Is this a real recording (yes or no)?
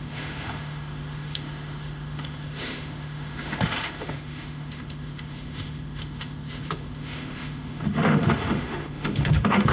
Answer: no